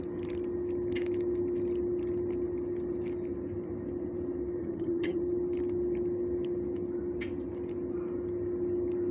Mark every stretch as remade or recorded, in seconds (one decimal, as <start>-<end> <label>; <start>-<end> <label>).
0.0-4.6 recorded; 4.6-5.2 remade; 5.2-9.1 recorded